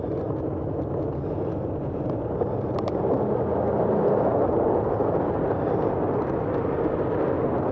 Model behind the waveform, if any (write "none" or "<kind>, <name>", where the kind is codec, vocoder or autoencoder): none